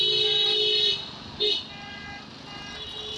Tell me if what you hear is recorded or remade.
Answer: recorded